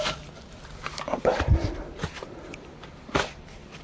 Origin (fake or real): real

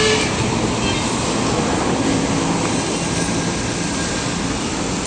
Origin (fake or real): real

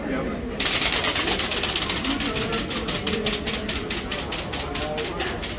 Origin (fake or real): real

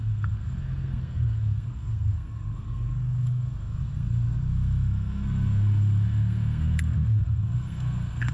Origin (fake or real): fake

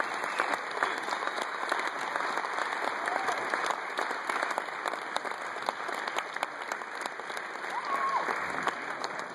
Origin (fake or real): real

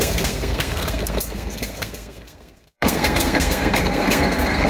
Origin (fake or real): fake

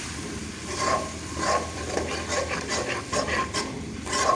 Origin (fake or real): real